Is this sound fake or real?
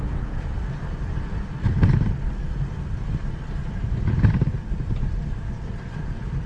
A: real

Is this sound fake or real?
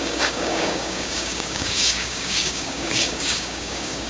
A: fake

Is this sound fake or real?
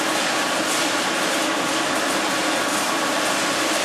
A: real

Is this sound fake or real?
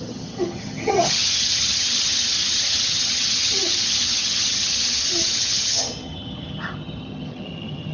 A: fake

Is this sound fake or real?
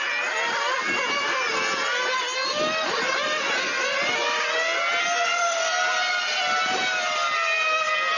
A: real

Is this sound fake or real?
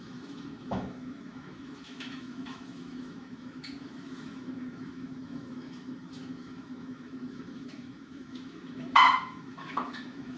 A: fake